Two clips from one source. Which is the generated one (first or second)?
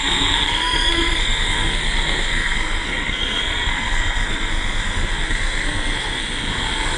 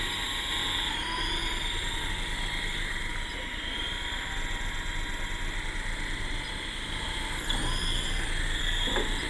first